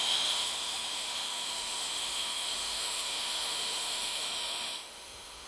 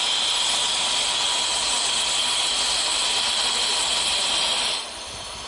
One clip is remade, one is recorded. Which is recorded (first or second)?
second